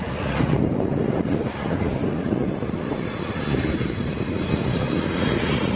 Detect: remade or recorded remade